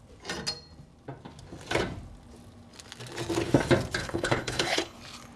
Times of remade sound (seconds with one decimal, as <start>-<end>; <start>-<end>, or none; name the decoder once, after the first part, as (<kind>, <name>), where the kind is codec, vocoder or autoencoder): 4.0-5.0 (codec, HILCodec)